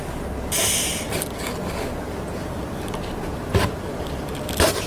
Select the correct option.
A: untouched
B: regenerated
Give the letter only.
A